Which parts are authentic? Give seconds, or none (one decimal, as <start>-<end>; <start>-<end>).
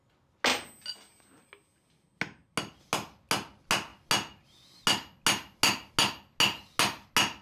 0.0-7.4